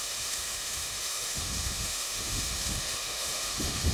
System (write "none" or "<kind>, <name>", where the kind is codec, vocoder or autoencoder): autoencoder, DAC-VAE